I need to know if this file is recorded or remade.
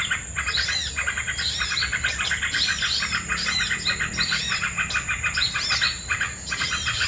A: recorded